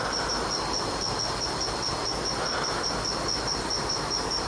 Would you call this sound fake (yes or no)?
no